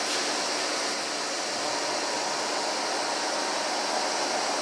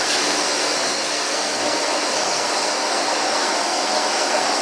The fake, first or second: second